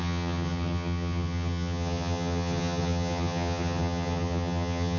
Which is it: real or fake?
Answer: fake